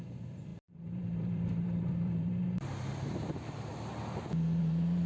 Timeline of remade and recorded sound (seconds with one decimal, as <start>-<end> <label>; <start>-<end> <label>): 0.0-3.7 remade; 3.7-4.6 recorded; 4.6-5.1 remade